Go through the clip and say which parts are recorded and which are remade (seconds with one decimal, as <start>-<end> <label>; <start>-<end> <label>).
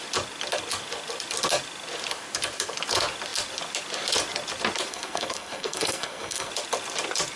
0.0-4.9 recorded; 4.9-6.5 remade; 6.5-7.4 recorded